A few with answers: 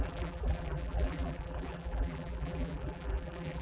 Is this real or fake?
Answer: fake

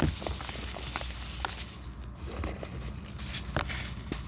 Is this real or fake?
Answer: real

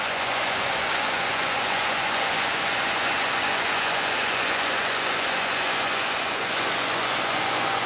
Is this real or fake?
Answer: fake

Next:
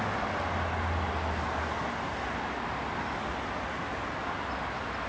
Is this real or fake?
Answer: real